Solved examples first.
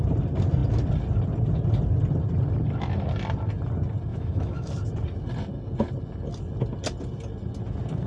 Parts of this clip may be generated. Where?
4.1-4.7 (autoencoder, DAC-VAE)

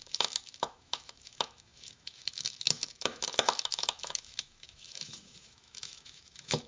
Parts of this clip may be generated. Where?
0.0-6.7 (autoencoder, DAC-VAE)

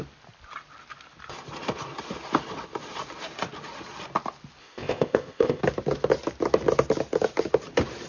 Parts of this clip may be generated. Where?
4.6-5.6 (codec, ZipCodec)

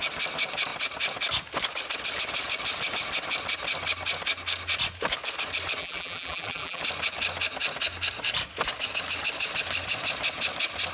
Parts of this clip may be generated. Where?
5.8-6.8 (vocoder, BigVGAN v2)

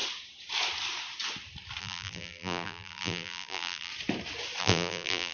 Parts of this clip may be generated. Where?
1.8-3.9 (vocoder, BigVGAN v2); 4.6-5.3

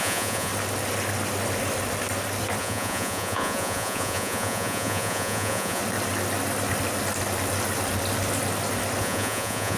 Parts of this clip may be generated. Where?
0.0-0.5 (vocoder, Vocos); 2.6-5.8; 9.0-9.8

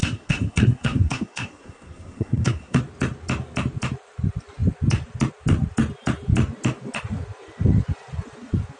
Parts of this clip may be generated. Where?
0.0-2.8 (codec, SNAC)